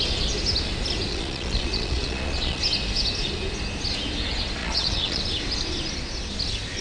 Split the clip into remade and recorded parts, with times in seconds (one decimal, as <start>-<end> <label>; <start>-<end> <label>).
0.0-1.1 recorded; 1.1-2.6 remade; 2.6-4.6 recorded; 4.6-5.2 remade; 5.2-6.8 recorded